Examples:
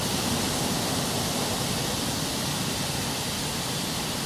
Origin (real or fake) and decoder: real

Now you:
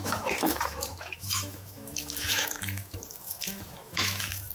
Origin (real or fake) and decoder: fake, autoencoder, DAC-VAE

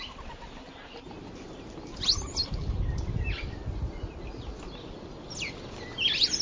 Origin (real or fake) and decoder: real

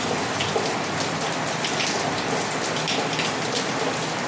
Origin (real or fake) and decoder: real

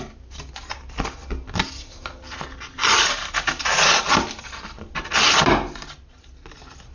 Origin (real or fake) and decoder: real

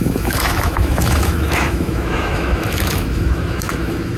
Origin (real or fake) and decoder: fake, autoencoder, DAC-VAE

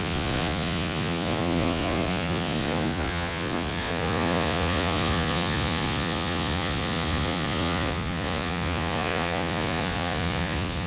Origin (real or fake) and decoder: fake, vocoder, Vocos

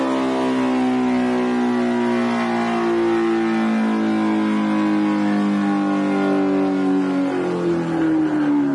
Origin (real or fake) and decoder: real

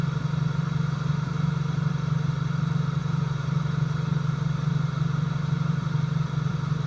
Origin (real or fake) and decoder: fake, vocoder, BigVGAN v2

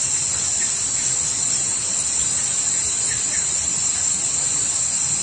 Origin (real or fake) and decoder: real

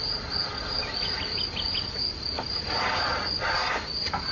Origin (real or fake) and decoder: real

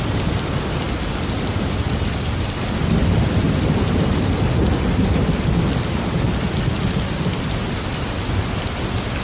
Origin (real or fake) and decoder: real